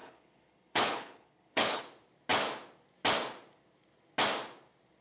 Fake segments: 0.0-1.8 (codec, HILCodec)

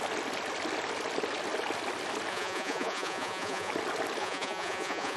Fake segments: 2.3-3.7 (vocoder, Vocos); 4.2-5.2

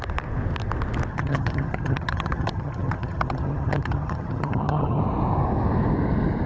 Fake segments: 1.1-5.0 (vocoder, HiFi-GAN)

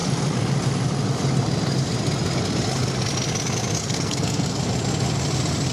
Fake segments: 3.8-4.6 (codec, SNAC)

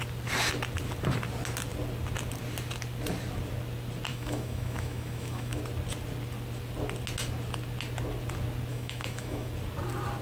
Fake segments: 4.1-5.6 (autoencoder, DAC-VAE); 8.7-9.5